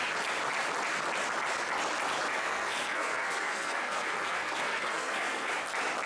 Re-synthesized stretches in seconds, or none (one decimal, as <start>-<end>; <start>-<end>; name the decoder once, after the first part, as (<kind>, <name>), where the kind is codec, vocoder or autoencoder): 2.3-5.5 (codec, SNAC)